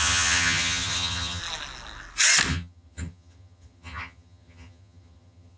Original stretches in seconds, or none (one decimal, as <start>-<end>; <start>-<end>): 1.4-2.5